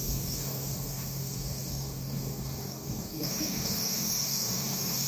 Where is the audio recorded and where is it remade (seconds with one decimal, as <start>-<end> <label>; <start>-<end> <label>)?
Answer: 0.0-5.1 remade